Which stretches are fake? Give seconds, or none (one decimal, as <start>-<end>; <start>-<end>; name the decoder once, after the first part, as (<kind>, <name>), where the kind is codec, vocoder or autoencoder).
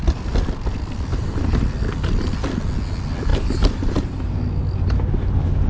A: 1.1-1.6 (vocoder, BigVGAN v2); 3.3-4.3